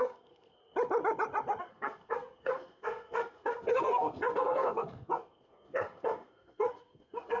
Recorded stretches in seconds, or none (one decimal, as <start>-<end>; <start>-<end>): 0.6-1.6